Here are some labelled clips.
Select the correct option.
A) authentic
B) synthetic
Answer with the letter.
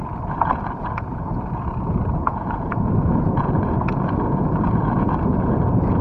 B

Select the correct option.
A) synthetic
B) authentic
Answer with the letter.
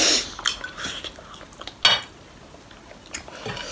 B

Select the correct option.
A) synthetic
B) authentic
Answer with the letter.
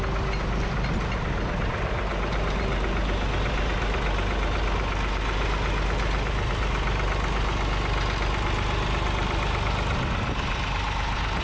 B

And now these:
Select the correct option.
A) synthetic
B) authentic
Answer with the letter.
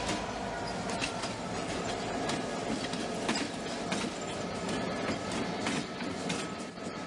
B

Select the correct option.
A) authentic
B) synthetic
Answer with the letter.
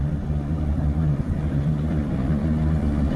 B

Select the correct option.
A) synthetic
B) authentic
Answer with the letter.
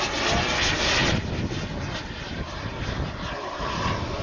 B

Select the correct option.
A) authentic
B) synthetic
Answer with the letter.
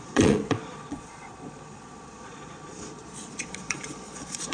B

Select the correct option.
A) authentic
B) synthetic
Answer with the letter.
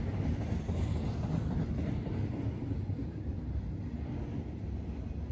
A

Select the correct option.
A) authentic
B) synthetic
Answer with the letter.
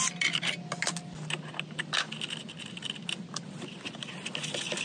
A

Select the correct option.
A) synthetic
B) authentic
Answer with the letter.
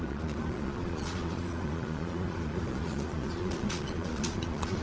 A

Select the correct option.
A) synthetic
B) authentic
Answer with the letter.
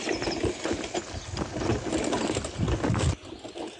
B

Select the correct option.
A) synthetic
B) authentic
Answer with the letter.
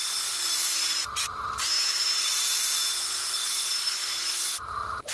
B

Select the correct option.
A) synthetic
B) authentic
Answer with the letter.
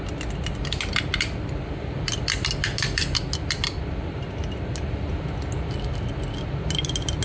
B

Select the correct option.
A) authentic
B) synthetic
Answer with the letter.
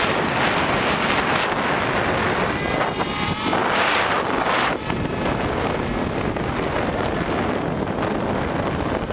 A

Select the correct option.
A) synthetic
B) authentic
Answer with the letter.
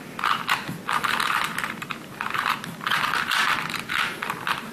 B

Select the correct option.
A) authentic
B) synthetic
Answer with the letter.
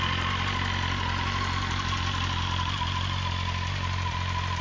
A